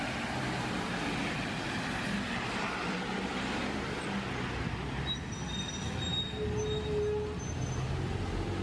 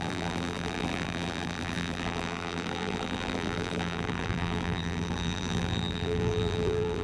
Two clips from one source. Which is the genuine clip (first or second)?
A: first